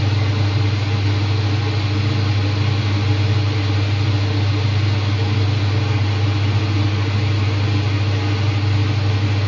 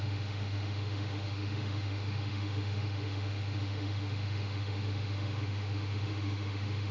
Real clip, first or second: first